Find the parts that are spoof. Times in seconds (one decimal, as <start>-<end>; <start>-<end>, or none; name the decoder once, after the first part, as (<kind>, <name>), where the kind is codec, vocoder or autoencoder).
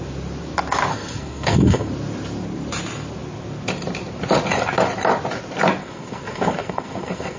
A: 0.9-1.9 (codec, SNAC); 5.8-7.4